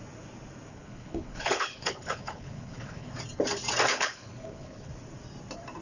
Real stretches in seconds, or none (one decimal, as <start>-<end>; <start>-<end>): 0.0-0.7; 3.1-3.9; 4.9-5.8